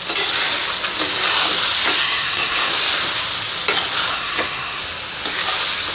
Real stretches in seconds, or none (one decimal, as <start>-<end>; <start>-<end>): 0.0-2.0; 2.7-4.1; 4.8-5.9